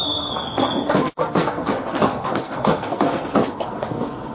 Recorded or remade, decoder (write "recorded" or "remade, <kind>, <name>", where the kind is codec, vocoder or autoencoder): remade, codec, SNAC